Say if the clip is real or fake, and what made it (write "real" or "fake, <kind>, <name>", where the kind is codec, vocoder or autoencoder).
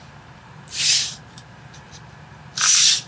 fake, vocoder, BigVGAN v2